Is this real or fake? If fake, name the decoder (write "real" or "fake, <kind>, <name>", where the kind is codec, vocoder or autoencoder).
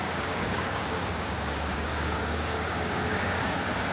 fake, codec, DAC